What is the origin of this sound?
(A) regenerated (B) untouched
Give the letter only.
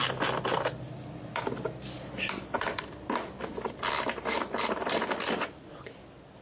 B